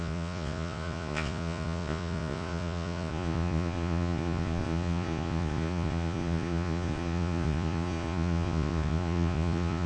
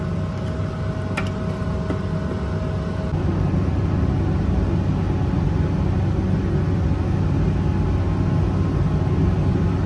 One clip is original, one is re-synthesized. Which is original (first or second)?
second